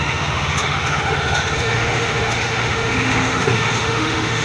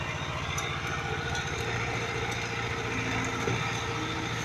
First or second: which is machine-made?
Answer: first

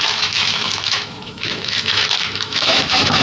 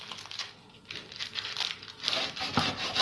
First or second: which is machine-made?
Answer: first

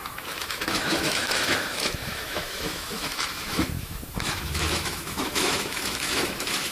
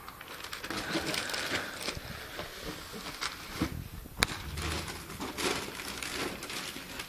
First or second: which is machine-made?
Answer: first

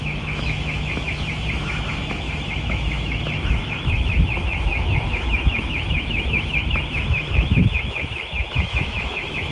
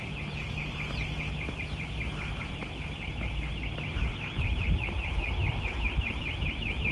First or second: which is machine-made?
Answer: first